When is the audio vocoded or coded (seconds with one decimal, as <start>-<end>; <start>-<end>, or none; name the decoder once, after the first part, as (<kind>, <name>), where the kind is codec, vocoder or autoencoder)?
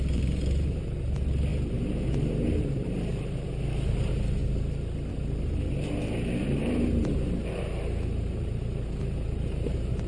0.0-1.5 (vocoder, BigVGAN v2); 2.1-4.4; 6.7-10.1